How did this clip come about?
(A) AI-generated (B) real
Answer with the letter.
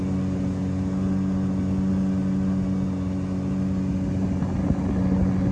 B